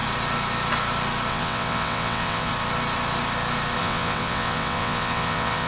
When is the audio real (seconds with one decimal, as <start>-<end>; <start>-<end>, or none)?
0.0-1.3; 2.5-3.8

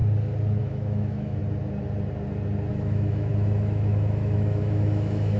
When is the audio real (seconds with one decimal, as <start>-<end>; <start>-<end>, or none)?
0.0-0.6; 1.4-2.7